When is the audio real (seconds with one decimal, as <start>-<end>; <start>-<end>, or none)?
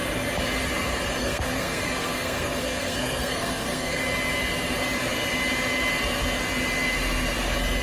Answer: 0.0-1.2; 4.0-7.8